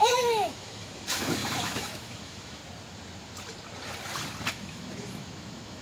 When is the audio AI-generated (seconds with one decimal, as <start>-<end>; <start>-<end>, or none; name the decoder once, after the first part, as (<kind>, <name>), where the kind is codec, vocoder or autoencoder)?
0.0-2.6 (autoencoder, DAC-VAE); 4.5-5.8